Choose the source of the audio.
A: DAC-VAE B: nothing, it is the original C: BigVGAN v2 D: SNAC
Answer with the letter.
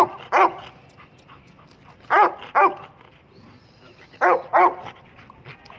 B